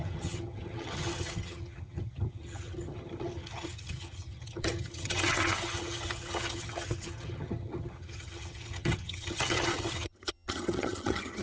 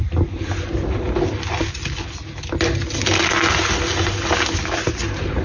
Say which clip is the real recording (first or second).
second